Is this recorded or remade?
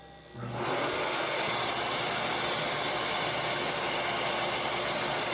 recorded